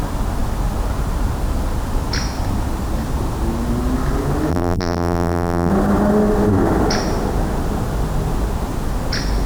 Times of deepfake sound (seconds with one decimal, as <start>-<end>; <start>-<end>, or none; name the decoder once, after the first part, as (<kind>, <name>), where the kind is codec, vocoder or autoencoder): 4.5-5.7 (vocoder, BigVGAN v2)